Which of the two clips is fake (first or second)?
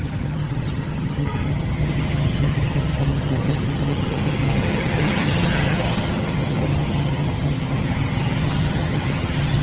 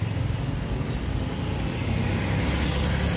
first